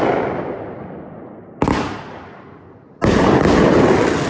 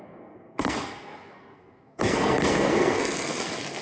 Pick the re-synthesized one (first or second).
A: second